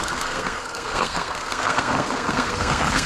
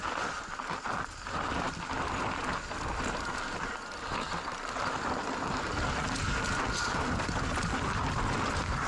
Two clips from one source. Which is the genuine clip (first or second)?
second